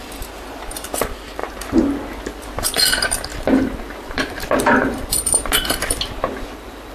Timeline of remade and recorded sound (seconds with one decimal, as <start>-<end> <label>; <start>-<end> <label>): 0.0-1.4 remade; 1.4-2.6 recorded; 2.6-6.9 remade

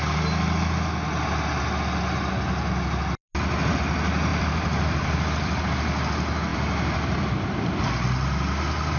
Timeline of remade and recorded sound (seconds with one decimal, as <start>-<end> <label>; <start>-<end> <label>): 0.0-4.3 recorded; 4.3-5.6 remade; 5.6-6.5 recorded; 6.5-7.8 remade; 7.8-9.0 recorded